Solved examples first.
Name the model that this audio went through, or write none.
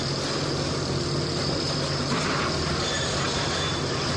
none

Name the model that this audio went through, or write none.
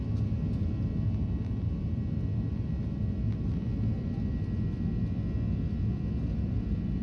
none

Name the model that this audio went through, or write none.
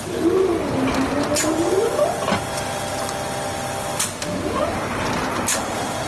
none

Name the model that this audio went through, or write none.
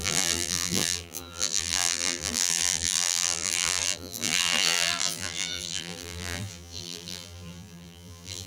vocoder, BigVGAN v2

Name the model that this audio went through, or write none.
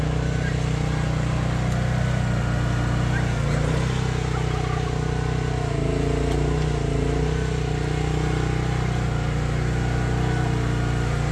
none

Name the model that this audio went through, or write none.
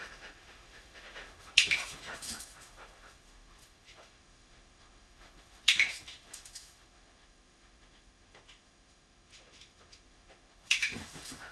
autoencoder, DAC-VAE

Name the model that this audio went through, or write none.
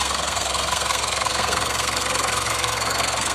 codec, SNAC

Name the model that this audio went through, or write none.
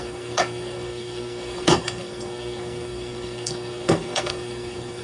codec, SNAC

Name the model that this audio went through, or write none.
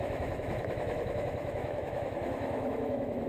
autoencoder, DAC-VAE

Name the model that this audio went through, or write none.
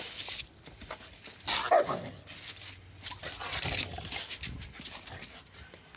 none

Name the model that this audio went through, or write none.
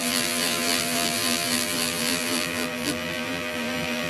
vocoder, BigVGAN v2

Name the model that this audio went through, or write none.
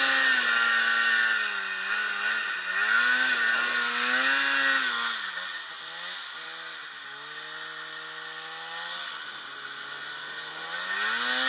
none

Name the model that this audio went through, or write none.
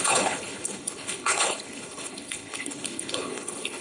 codec, HILCodec